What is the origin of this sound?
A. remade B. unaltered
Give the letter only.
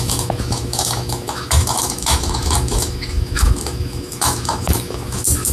A